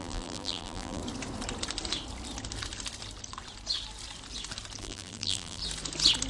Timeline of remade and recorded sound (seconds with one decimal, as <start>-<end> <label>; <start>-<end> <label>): 0.0-1.0 remade; 1.0-4.8 recorded; 4.8-5.6 remade; 5.6-6.3 recorded